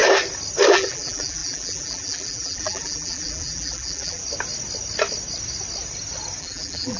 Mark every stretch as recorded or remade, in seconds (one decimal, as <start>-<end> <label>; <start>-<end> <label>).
0.0-0.7 recorded; 0.7-4.2 remade; 4.2-6.4 recorded; 6.4-7.0 remade